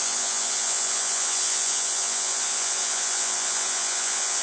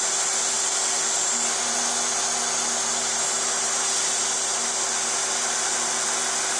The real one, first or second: second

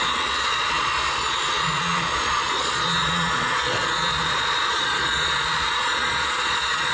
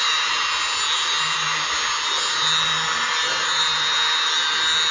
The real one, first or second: second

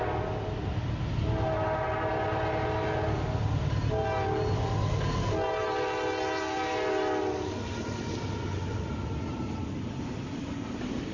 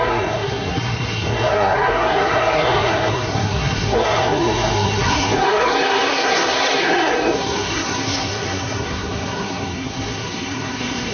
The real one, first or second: first